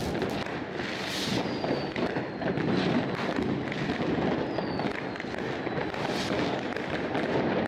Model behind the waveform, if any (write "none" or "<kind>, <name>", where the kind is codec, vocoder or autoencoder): none